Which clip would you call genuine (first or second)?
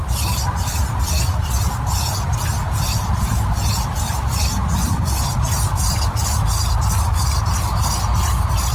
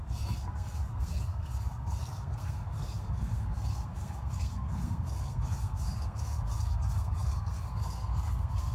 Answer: first